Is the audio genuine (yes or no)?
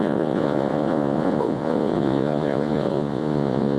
no